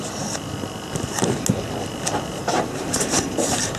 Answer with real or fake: real